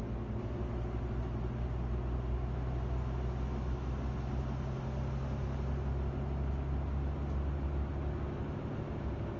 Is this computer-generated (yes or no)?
no